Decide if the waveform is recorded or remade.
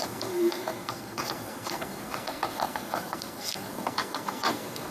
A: remade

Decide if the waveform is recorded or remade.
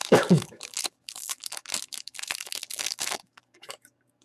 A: remade